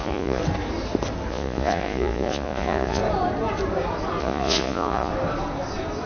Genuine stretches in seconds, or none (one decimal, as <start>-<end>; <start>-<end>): 0.4-1.3; 3.0-4.2; 5.1-6.1